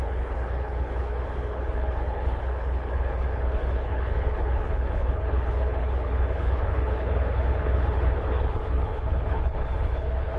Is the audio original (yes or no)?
no